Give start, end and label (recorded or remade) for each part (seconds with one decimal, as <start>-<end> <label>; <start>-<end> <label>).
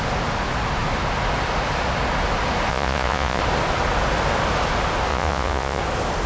0.0-2.7 recorded; 2.7-3.4 remade; 3.4-5.1 recorded; 5.1-5.8 remade; 5.8-6.3 recorded